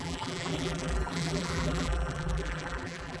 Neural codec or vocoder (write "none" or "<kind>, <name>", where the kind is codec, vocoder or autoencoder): vocoder, BigVGAN v2